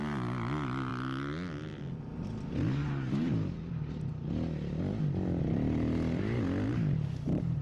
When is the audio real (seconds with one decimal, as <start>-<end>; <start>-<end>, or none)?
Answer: 0.0-7.6